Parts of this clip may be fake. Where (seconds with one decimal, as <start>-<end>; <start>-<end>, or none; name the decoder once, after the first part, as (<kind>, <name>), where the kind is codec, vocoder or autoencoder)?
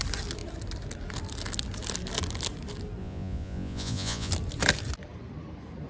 3.0-4.3 (vocoder, Vocos)